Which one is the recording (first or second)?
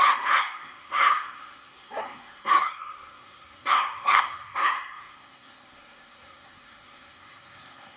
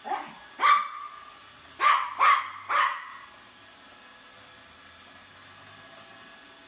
second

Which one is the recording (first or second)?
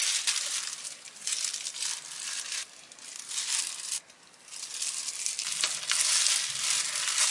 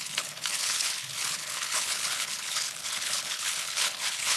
first